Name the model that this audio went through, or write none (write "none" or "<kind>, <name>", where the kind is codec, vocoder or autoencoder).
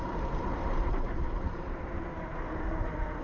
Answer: vocoder, BigVGAN v2